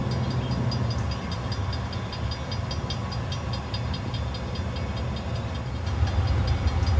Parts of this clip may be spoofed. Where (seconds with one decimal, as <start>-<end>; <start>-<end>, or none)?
none